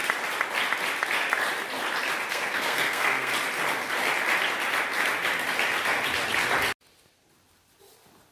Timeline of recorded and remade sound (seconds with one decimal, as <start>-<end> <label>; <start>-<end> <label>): 0.0-2.3 recorded; 2.3-3.3 remade; 3.3-8.3 recorded